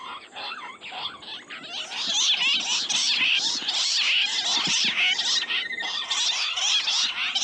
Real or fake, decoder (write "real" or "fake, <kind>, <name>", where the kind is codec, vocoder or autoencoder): real